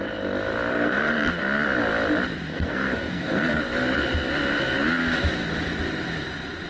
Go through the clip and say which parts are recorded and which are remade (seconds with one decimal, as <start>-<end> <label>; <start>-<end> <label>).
0.0-0.7 recorded; 0.7-1.3 remade; 1.3-2.5 recorded; 2.5-3.6 remade; 3.6-6.7 recorded